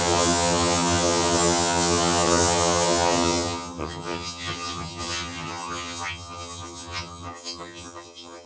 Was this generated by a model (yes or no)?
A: yes